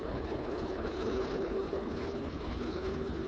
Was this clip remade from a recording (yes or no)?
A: yes